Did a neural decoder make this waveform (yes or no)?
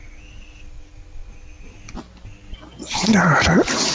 no